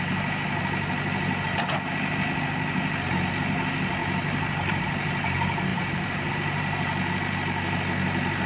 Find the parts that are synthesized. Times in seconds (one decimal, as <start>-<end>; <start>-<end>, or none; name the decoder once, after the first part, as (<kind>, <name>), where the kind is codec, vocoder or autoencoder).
5.7-6.3 (vocoder, BigVGAN v2)